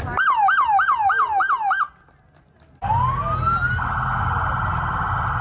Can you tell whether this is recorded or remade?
recorded